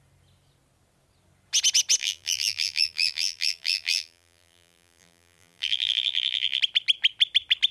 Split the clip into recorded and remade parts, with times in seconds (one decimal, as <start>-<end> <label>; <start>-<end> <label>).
0.0-2.0 recorded; 2.0-6.6 remade; 6.6-7.7 recorded